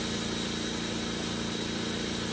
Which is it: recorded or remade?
recorded